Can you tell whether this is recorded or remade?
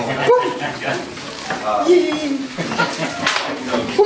recorded